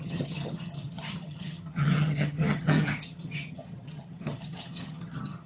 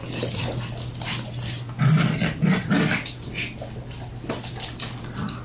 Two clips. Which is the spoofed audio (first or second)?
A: first